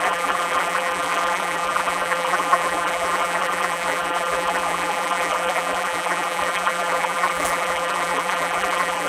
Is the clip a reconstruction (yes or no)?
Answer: yes